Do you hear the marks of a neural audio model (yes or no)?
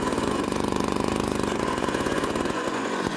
yes